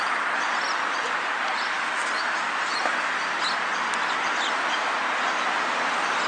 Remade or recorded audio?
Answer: recorded